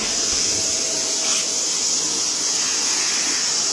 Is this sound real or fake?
real